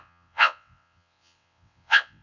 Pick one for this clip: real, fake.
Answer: fake